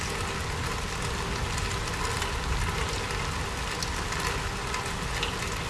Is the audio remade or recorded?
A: recorded